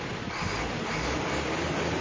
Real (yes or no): yes